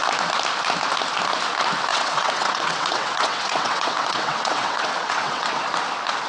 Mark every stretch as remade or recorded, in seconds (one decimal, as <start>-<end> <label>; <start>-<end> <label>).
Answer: 0.0-1.9 recorded; 1.9-5.6 remade; 5.6-6.3 recorded